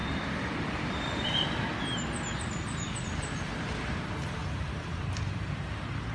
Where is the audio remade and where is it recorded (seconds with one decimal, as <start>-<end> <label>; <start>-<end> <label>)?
0.0-1.7 remade; 1.7-3.1 recorded; 3.1-4.4 remade; 4.4-5.0 recorded; 5.0-6.1 remade